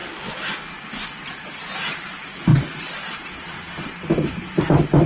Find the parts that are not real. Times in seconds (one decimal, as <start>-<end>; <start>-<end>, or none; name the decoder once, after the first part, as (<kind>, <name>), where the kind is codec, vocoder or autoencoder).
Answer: none